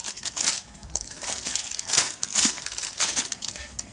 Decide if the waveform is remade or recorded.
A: remade